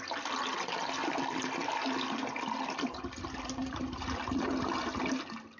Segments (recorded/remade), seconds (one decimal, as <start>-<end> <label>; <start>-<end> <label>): 0.0-5.6 recorded